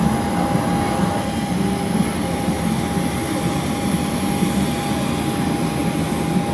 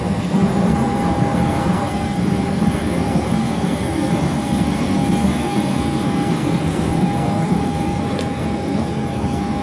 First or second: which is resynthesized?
second